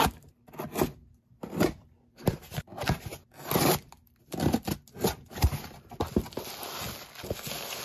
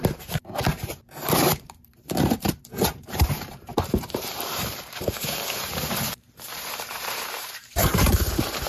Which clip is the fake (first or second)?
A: second